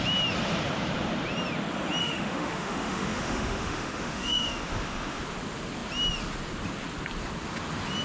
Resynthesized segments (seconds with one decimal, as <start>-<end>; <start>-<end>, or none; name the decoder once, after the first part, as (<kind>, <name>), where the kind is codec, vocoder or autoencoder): 2.0-5.2 (autoencoder, DAC-VAE)